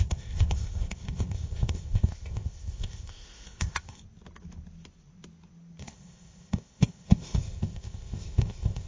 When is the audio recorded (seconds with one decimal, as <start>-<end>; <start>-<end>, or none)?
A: 4.0-5.8